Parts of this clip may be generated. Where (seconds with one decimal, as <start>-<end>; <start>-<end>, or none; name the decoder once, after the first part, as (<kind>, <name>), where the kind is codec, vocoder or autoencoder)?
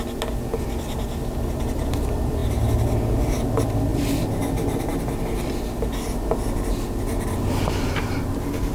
0.0-3.9 (vocoder, BigVGAN v2); 4.4-8.7